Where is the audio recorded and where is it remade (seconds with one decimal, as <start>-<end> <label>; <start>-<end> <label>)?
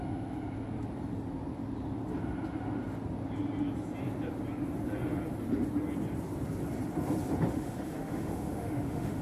0.0-7.5 recorded; 7.5-9.2 remade